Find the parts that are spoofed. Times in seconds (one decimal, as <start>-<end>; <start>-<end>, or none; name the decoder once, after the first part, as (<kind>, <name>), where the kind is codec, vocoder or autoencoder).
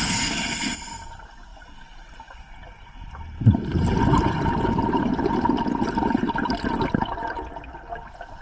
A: none